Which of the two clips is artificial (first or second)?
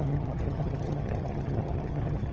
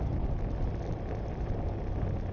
first